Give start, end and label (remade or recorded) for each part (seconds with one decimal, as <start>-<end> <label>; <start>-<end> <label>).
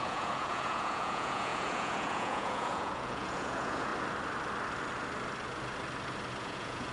0.0-3.9 remade; 3.9-6.4 recorded; 6.4-6.9 remade